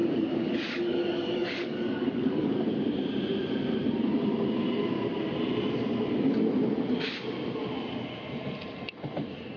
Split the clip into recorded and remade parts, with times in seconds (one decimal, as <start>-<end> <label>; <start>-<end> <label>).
0.0-2.5 remade; 2.5-9.6 recorded